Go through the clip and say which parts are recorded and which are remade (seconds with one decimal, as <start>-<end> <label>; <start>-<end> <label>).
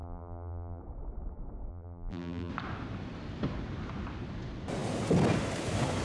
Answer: 0.0-0.8 remade; 0.8-1.7 recorded; 1.7-2.5 remade; 2.5-6.0 recorded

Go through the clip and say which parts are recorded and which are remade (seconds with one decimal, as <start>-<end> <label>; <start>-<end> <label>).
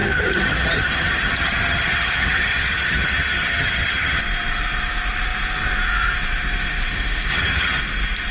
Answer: 0.0-4.2 remade; 4.2-7.3 recorded; 7.3-7.8 remade; 7.8-8.3 recorded